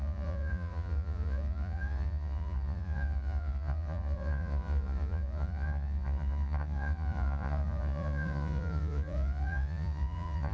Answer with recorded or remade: remade